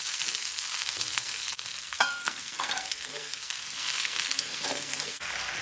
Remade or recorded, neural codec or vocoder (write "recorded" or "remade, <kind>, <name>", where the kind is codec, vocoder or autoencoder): remade, codec, SNAC